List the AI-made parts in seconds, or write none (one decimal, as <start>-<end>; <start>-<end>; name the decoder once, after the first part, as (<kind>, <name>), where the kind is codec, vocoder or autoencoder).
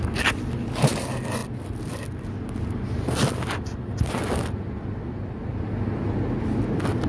none